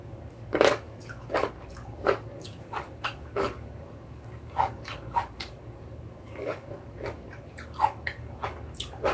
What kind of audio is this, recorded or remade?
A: remade